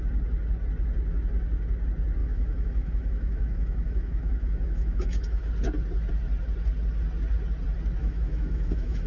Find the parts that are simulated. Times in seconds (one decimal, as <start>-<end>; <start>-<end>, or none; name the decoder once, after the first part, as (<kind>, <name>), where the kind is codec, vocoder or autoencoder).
2.2-5.5 (autoencoder, DAC-VAE); 8.0-9.1